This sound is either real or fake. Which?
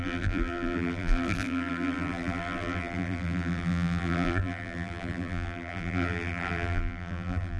fake